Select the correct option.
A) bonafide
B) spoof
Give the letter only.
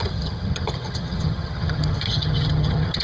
B